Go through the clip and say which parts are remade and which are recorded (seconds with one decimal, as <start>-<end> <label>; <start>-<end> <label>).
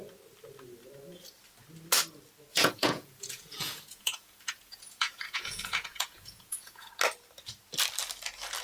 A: 0.0-2.5 recorded; 2.5-6.9 remade; 6.9-8.6 recorded